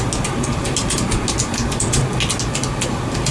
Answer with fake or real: real